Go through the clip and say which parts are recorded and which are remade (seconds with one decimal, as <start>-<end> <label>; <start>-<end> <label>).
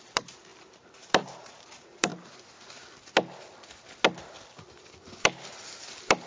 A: 0.0-2.1 remade; 2.1-6.3 recorded